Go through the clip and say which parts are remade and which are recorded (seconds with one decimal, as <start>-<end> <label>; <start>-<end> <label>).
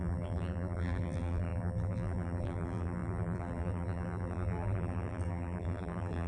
0.0-6.3 remade